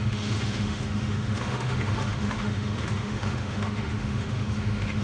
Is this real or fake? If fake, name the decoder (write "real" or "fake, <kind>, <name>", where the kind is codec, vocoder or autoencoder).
fake, autoencoder, DAC-VAE